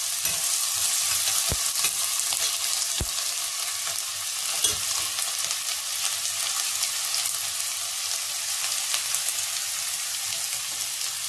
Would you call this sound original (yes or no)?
yes